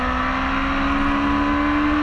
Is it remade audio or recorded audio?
recorded